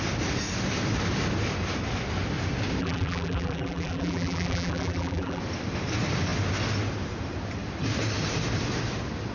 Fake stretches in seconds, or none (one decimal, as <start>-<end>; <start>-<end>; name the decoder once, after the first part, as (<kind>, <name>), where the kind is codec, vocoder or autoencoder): 2.8-5.4 (vocoder, BigVGAN v2)